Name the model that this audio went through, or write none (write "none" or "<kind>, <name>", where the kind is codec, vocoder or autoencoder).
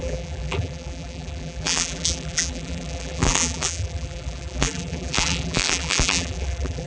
vocoder, BigVGAN v2